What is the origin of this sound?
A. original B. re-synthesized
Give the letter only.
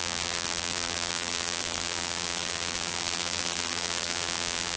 B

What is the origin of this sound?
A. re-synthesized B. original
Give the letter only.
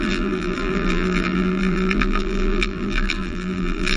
A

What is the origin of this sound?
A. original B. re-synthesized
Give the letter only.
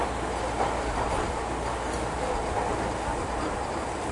A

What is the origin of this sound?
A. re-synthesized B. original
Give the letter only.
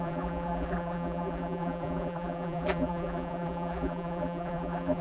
A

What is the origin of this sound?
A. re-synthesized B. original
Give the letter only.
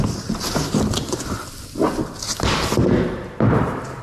B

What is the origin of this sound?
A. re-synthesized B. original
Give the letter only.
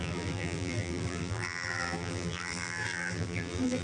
A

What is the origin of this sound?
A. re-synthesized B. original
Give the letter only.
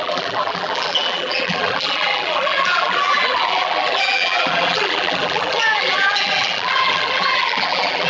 A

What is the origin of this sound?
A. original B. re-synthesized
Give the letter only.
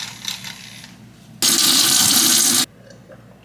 A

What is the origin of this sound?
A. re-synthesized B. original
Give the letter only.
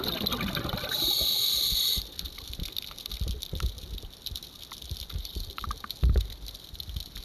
B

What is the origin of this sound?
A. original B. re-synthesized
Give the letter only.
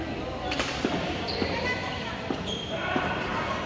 B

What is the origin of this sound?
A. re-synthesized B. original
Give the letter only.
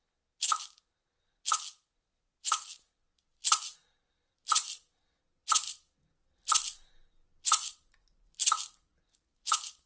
B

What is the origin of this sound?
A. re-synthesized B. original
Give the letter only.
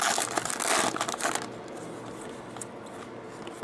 B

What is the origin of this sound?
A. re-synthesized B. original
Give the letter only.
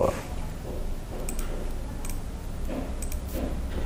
B